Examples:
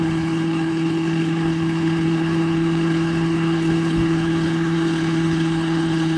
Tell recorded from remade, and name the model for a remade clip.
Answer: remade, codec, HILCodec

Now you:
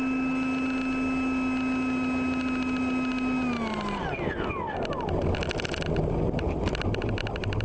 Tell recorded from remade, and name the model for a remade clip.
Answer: recorded